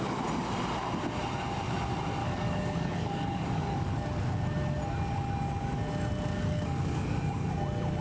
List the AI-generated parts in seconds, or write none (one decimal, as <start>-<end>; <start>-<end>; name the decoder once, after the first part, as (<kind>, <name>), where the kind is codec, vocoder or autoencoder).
2.2-3.9 (codec, DAC); 6.3-7.5